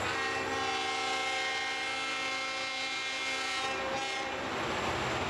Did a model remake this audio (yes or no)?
no